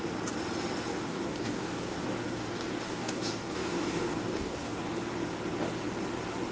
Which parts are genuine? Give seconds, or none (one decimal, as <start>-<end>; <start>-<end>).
0.0-0.9; 4.8-6.5